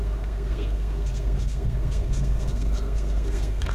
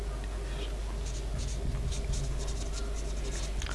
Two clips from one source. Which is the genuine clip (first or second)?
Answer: second